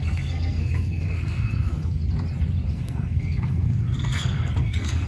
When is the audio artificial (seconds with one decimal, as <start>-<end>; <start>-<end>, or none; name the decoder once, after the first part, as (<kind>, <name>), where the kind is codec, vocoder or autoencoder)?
0.0-2.0 (codec, SNAC); 2.7-5.1